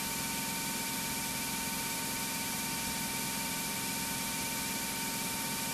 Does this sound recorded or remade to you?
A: recorded